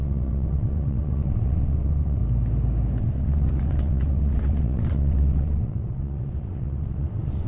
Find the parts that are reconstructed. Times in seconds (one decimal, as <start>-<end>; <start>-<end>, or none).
0.0-2.2; 3.0-7.5